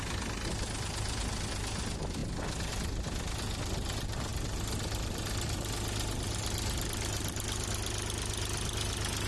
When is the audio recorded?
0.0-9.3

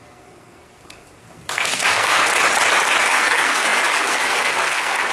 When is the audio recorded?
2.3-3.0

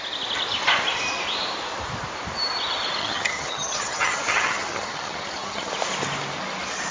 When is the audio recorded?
0.0-3.0; 5.7-6.9